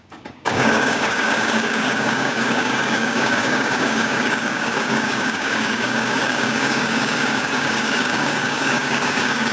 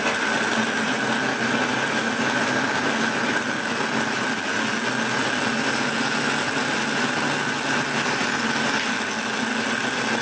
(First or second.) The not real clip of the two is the first